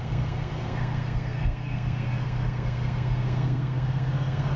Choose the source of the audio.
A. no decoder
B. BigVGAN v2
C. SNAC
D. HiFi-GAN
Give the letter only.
C